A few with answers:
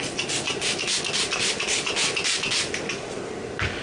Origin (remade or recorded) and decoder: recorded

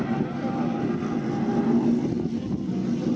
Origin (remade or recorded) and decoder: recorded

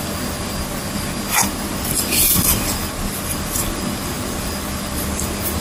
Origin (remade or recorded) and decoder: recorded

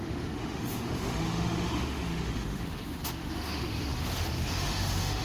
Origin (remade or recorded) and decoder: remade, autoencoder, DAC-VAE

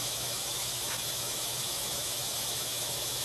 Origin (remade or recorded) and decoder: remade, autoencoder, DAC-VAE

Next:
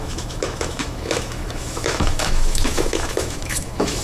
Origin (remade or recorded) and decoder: remade, autoencoder, DAC-VAE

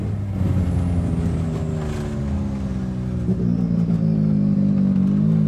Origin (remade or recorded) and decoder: recorded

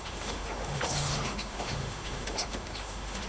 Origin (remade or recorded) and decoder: remade, autoencoder, DAC-VAE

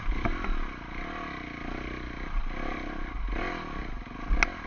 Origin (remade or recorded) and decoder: recorded